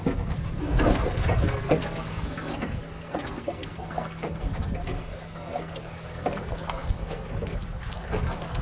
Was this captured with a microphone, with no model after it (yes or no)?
no